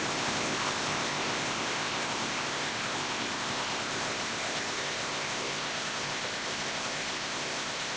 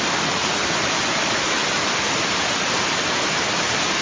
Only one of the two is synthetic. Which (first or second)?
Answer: first